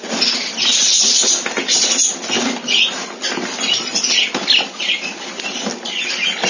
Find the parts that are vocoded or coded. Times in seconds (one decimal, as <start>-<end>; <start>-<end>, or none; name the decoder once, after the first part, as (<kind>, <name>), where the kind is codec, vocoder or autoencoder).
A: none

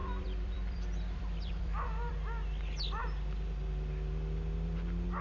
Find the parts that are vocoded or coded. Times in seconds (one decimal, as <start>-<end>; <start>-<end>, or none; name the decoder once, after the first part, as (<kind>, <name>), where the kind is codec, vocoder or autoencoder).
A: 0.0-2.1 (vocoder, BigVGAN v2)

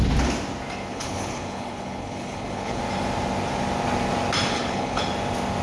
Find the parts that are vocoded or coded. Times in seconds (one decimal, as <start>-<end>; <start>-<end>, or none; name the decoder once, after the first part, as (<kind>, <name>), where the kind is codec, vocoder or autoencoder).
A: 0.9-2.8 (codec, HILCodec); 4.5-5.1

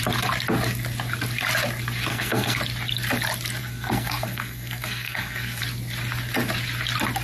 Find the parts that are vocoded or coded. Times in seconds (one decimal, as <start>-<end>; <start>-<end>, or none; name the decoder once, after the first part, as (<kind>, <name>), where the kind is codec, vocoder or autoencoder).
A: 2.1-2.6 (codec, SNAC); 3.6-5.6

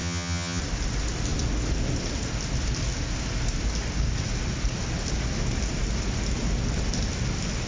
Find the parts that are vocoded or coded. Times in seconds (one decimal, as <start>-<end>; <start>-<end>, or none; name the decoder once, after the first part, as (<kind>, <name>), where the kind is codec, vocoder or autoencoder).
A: 0.0-0.6 (vocoder, HiFi-GAN)